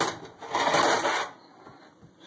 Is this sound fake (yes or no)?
no